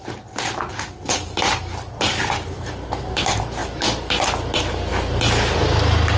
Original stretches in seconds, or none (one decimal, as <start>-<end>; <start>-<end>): 0.0-0.7; 3.0-6.2